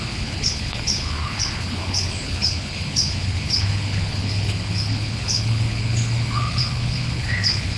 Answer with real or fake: fake